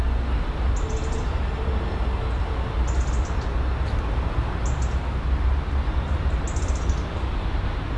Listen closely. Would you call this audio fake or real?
real